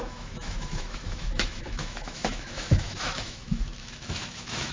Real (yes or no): no